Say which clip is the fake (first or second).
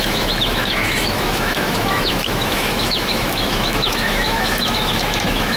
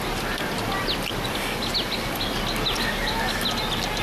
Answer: first